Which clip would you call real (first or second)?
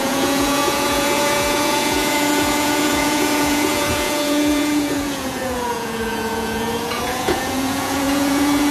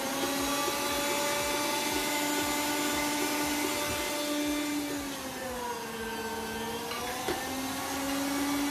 second